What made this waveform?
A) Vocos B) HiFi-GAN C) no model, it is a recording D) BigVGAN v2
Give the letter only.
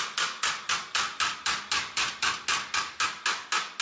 C